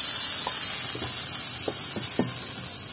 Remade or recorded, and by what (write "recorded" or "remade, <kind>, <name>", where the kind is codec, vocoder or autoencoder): recorded